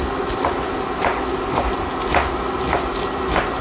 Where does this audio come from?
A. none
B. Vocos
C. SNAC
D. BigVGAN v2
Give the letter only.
A